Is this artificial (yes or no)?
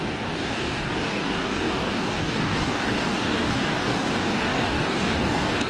yes